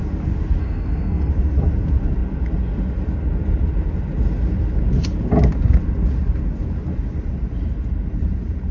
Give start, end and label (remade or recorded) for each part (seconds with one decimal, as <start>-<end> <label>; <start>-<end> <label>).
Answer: 0.0-0.6 recorded; 0.6-1.3 remade; 1.3-8.7 recorded